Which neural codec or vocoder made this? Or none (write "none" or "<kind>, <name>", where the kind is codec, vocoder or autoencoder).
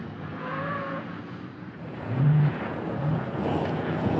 vocoder, Vocos